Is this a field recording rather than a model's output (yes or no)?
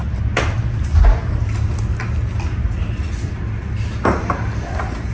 yes